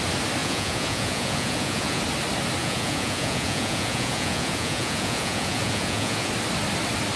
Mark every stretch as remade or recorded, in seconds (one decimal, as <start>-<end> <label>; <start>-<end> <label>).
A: 0.0-0.4 recorded; 0.4-2.0 remade; 2.0-2.6 recorded; 2.6-6.3 remade; 6.3-7.2 recorded